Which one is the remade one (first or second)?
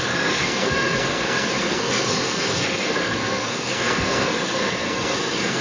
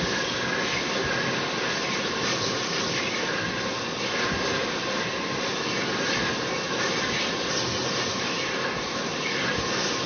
first